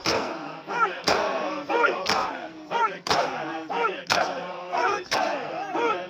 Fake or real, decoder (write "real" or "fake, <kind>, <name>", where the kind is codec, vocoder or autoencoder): fake, codec, SNAC